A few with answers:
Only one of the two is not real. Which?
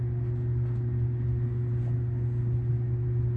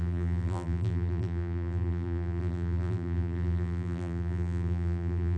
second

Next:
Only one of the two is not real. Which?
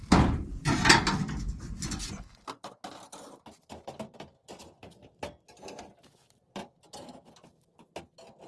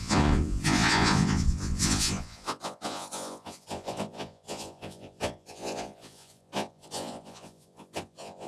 second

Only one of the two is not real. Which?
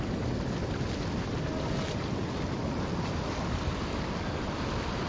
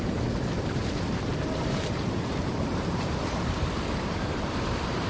second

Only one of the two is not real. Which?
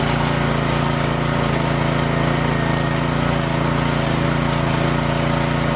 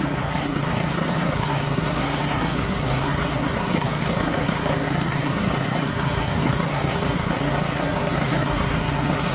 second